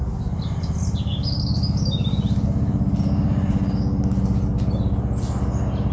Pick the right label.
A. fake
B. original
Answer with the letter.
B